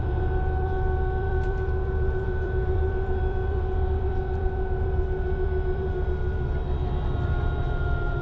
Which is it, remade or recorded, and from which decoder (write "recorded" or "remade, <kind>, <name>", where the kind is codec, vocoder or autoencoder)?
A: remade, vocoder, BigVGAN v2